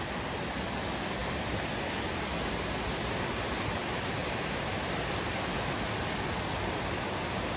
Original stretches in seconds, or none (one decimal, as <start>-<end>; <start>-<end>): 0.0-1.2; 1.7-4.2; 4.9-7.6